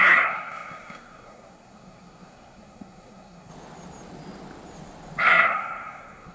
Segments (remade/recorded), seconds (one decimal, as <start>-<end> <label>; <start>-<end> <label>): 0.0-3.5 remade; 3.5-5.2 recorded; 5.2-6.3 remade